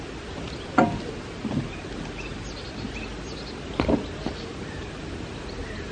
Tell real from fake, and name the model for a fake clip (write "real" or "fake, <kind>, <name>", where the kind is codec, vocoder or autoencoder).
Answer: real